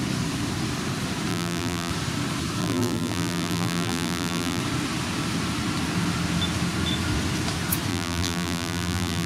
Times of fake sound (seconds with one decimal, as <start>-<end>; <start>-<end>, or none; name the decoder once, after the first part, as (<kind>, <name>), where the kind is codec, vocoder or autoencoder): 1.3-1.9 (vocoder, BigVGAN v2); 2.6-4.6; 7.9-9.3